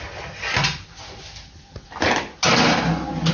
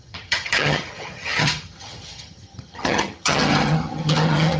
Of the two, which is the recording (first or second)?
first